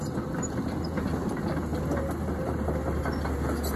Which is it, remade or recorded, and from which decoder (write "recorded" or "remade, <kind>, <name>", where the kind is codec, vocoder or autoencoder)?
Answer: recorded